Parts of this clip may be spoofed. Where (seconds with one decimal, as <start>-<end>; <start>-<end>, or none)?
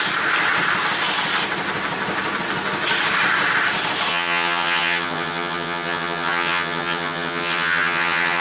4.1-8.4